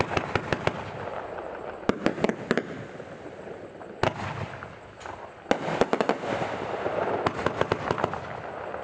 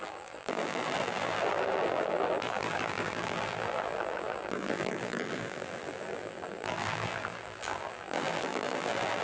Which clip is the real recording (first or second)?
first